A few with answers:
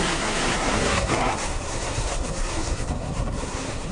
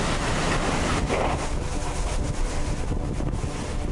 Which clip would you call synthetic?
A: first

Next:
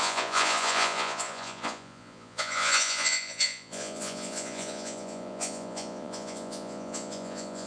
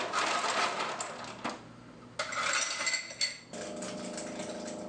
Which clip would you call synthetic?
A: first